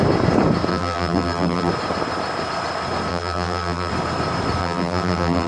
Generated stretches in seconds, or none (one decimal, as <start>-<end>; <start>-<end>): 0.7-1.7; 3.1-3.9; 4.6-5.5